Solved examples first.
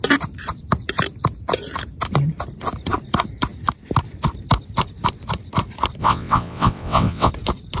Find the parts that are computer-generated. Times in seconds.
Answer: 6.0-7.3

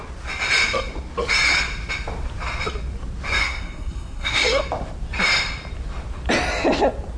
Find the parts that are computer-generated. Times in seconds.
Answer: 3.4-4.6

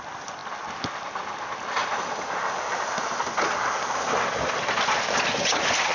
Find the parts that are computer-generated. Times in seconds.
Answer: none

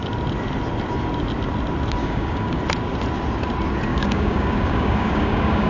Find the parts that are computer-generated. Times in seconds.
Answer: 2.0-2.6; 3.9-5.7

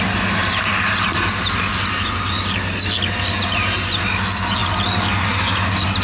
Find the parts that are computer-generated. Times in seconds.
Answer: none

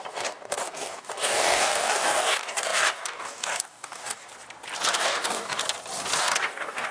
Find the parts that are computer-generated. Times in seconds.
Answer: 0.0-4.3; 4.9-5.6; 6.2-6.9

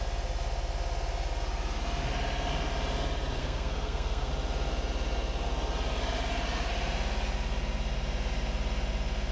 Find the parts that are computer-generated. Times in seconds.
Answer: 3.4-4.3

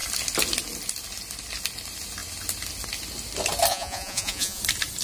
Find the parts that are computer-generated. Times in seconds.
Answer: 3.7-4.6